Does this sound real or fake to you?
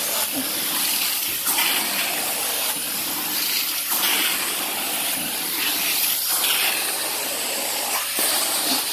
real